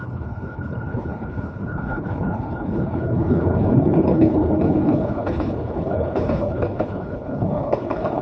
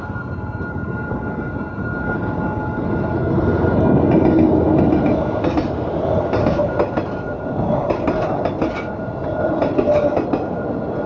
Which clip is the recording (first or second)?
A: second